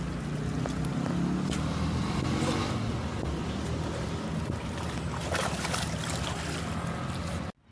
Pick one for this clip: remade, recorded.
recorded